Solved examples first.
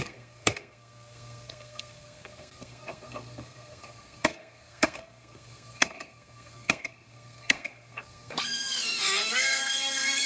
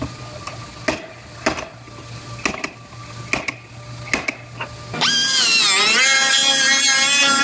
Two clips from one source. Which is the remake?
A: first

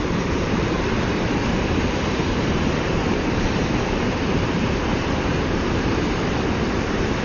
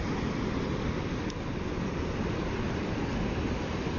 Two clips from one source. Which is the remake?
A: first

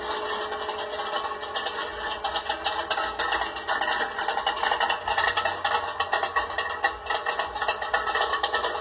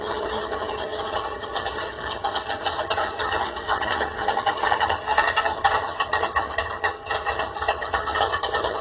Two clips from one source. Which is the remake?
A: second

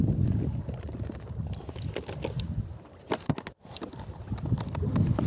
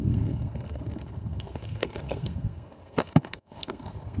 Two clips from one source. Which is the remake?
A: second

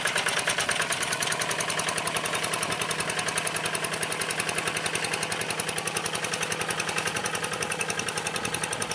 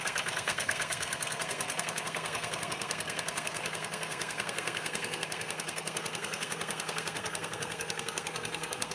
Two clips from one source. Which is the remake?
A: second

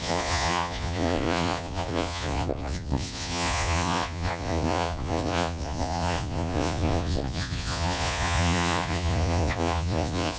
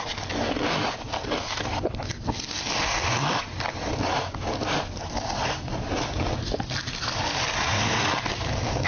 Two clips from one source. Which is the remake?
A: first